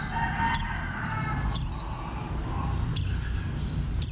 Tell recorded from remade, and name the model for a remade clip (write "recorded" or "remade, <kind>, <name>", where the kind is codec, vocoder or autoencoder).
recorded